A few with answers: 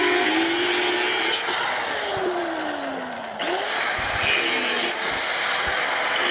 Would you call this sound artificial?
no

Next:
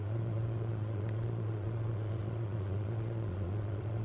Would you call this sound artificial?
yes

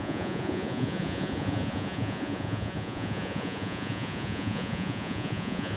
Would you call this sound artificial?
yes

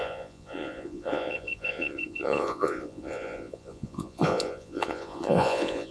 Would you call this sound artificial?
yes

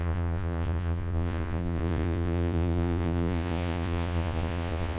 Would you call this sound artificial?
yes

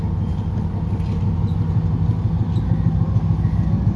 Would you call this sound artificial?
no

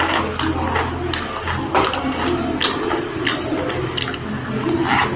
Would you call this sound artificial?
no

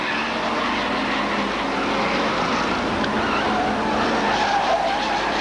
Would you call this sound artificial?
no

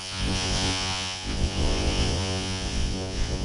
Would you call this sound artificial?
yes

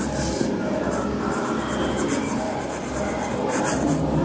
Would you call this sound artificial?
no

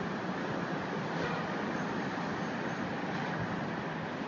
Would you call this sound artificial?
no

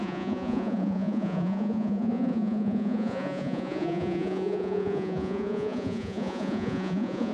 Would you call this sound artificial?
yes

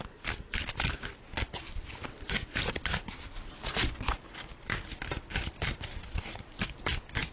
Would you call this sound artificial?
no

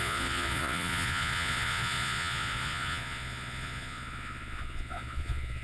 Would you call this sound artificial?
yes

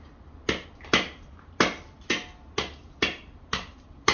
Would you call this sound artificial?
no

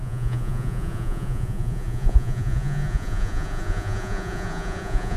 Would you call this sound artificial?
yes